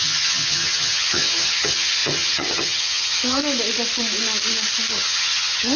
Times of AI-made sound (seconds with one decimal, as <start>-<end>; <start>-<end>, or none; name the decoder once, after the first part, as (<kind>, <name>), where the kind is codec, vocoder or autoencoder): 0.0-3.4 (vocoder, HiFi-GAN); 4.9-5.8